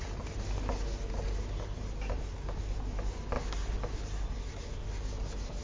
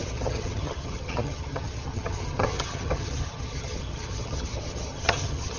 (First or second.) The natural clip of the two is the first